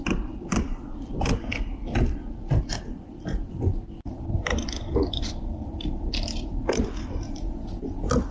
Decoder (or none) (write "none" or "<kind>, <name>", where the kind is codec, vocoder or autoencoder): vocoder, BigVGAN v2